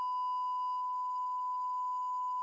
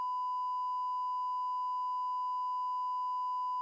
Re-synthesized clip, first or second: first